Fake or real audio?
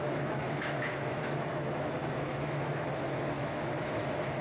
fake